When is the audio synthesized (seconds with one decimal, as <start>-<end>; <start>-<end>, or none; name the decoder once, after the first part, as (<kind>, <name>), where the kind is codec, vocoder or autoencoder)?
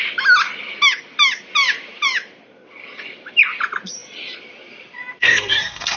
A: 5.2-6.0 (codec, SNAC)